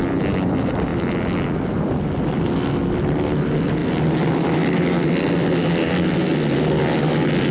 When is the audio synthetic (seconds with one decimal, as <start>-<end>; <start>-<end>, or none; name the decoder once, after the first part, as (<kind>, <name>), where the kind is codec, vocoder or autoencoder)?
none